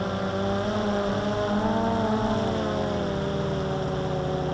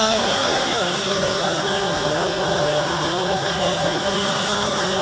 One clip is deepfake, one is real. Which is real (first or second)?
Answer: first